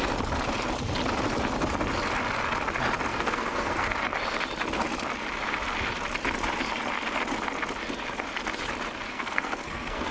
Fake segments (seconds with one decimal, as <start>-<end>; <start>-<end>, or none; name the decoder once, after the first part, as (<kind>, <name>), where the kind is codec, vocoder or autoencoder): 3.1-3.9 (codec, SNAC); 9.1-10.1